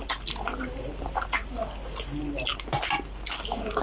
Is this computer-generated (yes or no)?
no